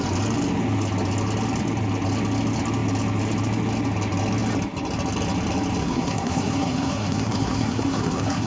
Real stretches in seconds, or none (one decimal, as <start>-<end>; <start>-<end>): 0.0-5.8